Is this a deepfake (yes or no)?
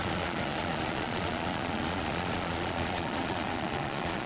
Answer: yes